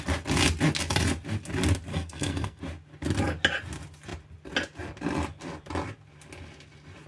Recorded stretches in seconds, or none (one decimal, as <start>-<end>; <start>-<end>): 0.0-1.9; 2.6-7.1